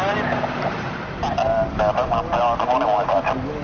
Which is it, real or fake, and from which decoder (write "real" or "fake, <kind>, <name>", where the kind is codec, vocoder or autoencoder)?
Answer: real